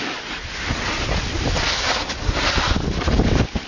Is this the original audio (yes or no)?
yes